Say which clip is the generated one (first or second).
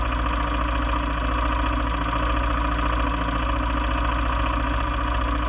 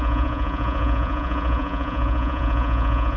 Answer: second